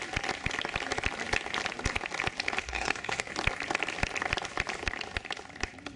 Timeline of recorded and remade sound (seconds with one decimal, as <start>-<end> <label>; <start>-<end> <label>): 0.0-2.6 recorded; 2.6-3.3 remade; 3.3-6.0 recorded